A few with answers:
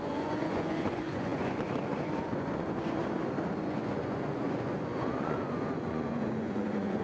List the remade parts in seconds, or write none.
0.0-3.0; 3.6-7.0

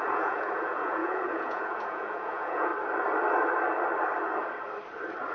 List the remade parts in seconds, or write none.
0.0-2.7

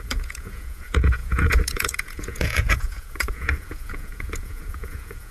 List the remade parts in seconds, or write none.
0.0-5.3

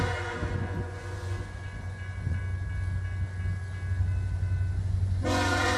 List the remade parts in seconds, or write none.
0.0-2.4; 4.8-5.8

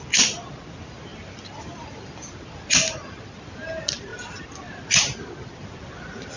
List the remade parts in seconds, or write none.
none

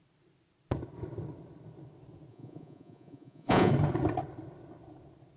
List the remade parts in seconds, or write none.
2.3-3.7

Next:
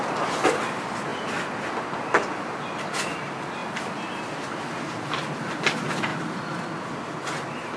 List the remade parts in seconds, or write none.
none

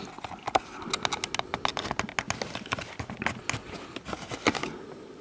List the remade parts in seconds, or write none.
none